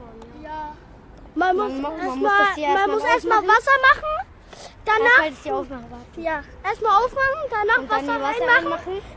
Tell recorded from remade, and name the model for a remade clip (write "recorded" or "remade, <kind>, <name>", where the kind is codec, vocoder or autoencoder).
recorded